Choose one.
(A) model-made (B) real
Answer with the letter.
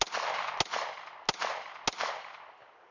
B